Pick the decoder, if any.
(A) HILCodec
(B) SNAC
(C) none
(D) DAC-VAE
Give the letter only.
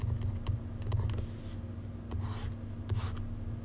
C